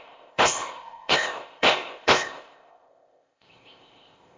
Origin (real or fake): fake